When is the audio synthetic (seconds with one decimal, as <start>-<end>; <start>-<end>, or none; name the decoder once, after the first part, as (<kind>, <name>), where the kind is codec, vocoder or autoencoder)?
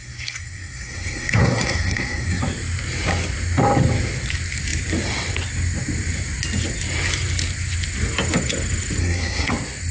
0.0-2.4 (codec, SNAC); 9.0-9.5